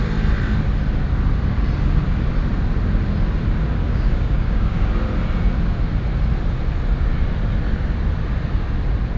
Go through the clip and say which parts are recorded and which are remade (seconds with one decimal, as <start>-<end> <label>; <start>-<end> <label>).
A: 0.0-3.8 recorded; 3.8-4.9 remade; 4.9-9.2 recorded